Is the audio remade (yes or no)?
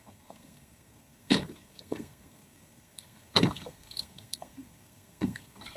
yes